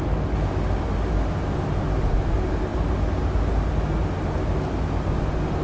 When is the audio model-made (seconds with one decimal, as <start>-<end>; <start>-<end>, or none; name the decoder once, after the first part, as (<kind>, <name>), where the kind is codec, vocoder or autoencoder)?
none